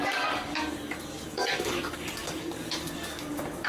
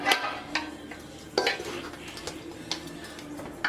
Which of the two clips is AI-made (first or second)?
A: first